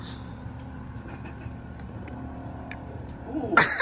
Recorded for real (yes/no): no